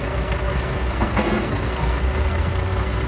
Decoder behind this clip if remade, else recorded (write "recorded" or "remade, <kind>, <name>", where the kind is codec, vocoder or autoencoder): remade, codec, SNAC